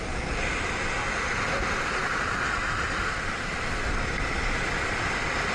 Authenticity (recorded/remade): recorded